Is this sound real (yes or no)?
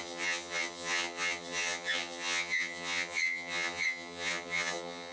no